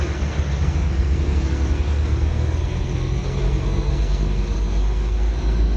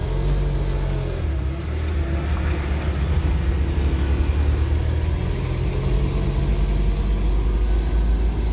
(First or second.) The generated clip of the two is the first